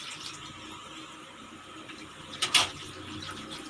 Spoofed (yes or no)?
no